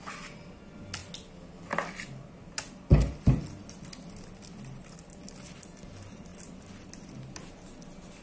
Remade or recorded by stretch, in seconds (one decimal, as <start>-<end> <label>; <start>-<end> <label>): 0.0-8.2 recorded